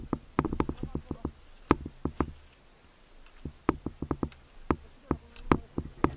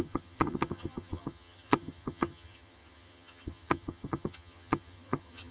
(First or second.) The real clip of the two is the first